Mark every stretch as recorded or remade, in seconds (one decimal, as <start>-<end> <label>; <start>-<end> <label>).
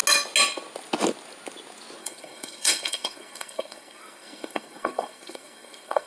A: 0.0-2.0 recorded; 2.0-6.1 remade